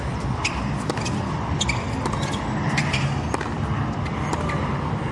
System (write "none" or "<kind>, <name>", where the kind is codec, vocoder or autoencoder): none